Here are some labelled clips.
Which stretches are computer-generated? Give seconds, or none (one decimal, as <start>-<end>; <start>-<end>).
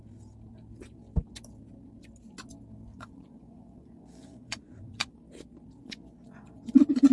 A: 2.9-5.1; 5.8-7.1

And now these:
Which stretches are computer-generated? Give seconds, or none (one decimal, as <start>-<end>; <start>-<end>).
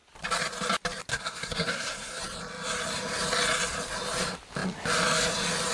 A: 1.1-2.2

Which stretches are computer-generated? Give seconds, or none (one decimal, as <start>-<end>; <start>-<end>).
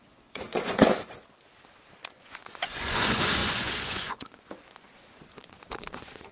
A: 0.0-0.9; 2.2-6.3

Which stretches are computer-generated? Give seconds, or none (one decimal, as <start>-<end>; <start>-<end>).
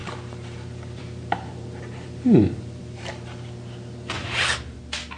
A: 0.0-3.1; 4.2-4.8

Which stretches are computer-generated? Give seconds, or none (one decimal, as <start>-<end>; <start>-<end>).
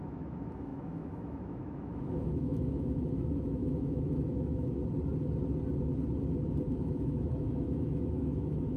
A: 0.0-4.8; 6.6-8.8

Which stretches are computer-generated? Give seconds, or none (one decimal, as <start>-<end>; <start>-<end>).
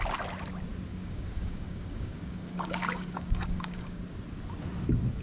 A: 0.9-4.0